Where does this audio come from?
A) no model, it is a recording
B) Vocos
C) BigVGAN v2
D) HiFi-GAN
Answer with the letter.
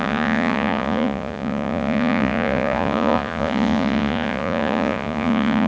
B